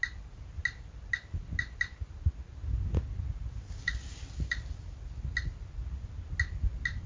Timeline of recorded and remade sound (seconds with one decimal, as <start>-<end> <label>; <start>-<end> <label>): 0.0-7.1 recorded